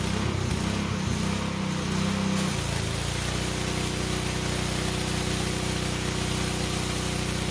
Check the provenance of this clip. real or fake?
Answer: real